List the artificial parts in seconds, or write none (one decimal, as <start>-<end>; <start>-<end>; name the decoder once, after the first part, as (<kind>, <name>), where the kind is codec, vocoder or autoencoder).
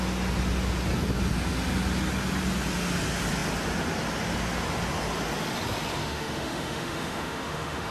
6.0-7.9 (autoencoder, DAC-VAE)